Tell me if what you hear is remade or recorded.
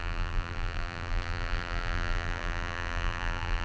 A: remade